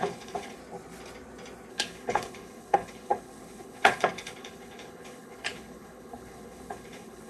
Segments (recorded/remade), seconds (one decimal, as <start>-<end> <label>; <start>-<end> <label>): 0.0-0.6 remade; 0.6-1.7 recorded; 1.7-7.3 remade